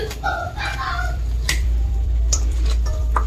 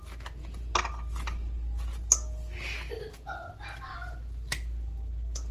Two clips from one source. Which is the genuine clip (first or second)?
second